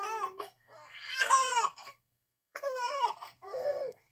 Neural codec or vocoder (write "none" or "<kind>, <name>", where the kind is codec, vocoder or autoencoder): codec, SNAC